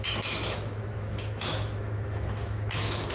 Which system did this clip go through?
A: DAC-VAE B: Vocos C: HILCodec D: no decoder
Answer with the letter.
A